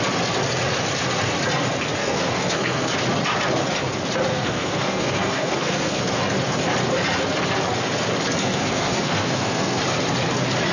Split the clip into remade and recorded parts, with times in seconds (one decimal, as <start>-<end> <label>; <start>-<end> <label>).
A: 0.0-2.0 recorded; 2.0-2.9 remade; 2.9-4.3 recorded; 4.3-6.2 remade; 6.2-8.4 recorded; 8.4-9.8 remade; 9.8-10.7 recorded